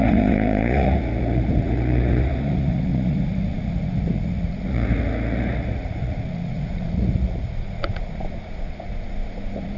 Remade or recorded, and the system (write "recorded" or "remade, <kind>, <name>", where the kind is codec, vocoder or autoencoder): remade, vocoder, Vocos